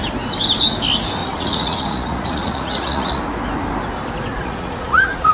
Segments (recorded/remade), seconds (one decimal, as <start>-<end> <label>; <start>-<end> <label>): 0.0-1.2 recorded; 1.2-3.2 remade; 3.2-4.3 recorded; 4.3-5.3 remade

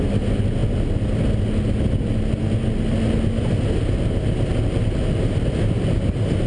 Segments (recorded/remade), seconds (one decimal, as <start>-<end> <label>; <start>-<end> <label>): 0.0-6.5 recorded

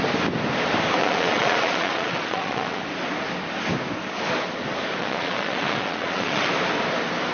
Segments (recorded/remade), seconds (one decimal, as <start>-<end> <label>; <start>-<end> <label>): 0.0-1.0 recorded; 1.0-2.8 remade; 2.8-5.0 recorded; 5.0-6.5 remade; 6.5-7.3 recorded

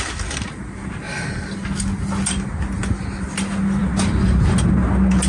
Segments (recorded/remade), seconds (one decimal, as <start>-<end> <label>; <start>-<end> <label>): 0.0-5.3 recorded

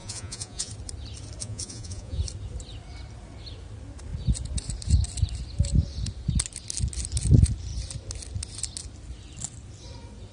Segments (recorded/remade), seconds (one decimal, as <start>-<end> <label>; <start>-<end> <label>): 0.0-0.7 remade; 0.7-1.4 recorded; 1.4-2.2 remade; 2.2-10.3 recorded

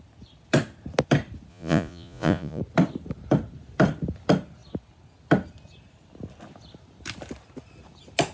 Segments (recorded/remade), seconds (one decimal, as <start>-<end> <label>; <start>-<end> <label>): 0.0-1.5 recorded; 1.5-2.6 remade; 2.6-8.3 recorded